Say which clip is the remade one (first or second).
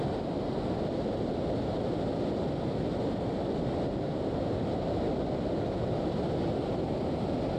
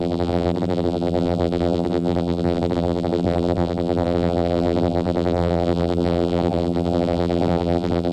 second